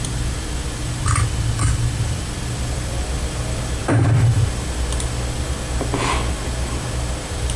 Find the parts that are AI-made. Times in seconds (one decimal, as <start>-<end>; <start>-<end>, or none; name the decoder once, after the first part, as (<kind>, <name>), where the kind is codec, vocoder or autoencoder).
0.0-3.8 (vocoder, BigVGAN v2); 6.3-7.6